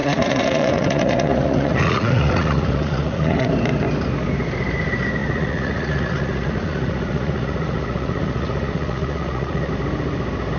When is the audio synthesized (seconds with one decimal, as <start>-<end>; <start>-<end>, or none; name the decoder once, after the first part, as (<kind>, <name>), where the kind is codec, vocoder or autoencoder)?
0.0-3.5 (vocoder, Vocos); 5.2-9.7